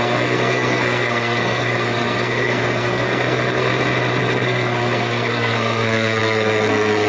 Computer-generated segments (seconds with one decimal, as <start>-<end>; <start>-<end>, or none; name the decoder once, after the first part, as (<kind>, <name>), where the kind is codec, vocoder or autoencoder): 0.0-3.7 (codec, SNAC); 4.2-7.1